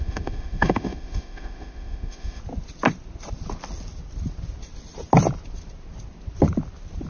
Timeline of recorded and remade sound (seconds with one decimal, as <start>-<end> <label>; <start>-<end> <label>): 0.0-2.4 remade; 2.4-7.1 recorded

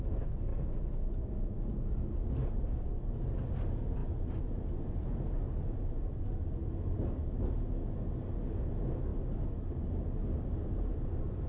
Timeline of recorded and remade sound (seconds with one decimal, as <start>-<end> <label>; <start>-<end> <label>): 0.0-11.5 recorded

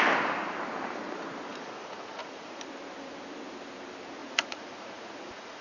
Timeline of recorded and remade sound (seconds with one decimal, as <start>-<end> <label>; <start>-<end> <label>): 0.0-1.5 recorded; 1.5-2.6 remade; 2.6-4.2 recorded; 4.2-5.6 remade

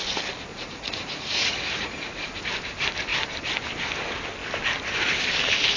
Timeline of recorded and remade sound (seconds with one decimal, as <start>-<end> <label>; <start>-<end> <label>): 0.0-0.5 recorded; 0.5-2.4 remade; 2.4-5.8 recorded

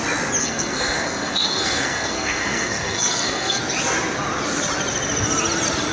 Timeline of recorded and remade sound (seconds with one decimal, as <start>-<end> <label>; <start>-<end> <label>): 0.0-0.4 recorded; 0.4-3.6 remade; 3.6-5.9 recorded

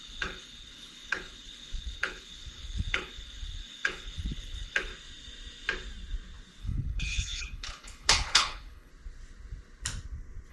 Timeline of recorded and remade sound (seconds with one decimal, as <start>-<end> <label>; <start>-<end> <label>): 0.0-4.9 remade; 4.9-6.6 recorded; 6.6-8.9 remade; 8.9-10.5 recorded

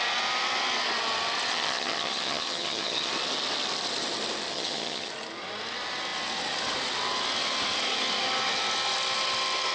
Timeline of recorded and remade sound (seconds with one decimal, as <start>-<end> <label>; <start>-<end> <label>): 0.0-1.5 recorded; 1.5-3.1 remade; 3.1-4.5 recorded; 4.5-5.1 remade; 5.1-9.7 recorded